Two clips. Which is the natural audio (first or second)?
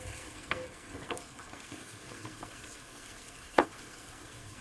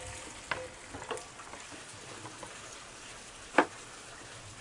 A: second